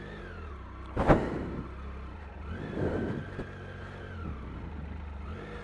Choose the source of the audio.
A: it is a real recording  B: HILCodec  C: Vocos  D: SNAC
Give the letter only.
A